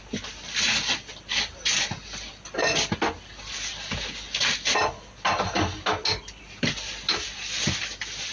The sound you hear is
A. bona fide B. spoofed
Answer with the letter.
A